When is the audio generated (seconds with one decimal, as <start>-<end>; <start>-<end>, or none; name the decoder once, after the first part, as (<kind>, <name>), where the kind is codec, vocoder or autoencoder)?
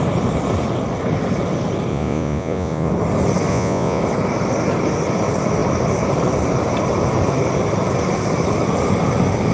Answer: 1.9-2.9 (vocoder, Vocos); 3.5-4.0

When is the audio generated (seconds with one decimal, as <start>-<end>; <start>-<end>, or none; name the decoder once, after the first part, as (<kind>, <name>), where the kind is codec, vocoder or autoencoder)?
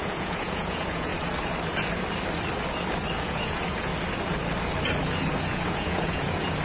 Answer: 0.0-1.1 (vocoder, Vocos); 3.2-3.9; 5.0-6.6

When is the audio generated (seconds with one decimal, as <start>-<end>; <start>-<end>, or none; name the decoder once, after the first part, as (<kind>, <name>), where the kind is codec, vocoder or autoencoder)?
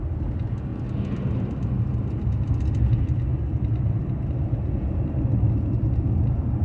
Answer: none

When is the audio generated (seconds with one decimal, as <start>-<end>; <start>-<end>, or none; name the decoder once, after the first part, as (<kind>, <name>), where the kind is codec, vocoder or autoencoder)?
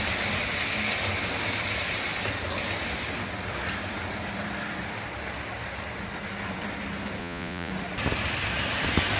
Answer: 7.2-7.7 (vocoder, Vocos)